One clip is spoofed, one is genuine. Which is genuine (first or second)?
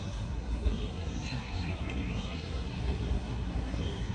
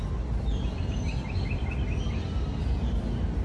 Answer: second